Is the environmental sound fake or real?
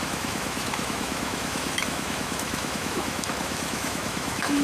fake